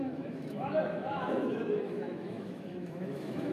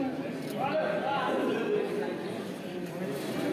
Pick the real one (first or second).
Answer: second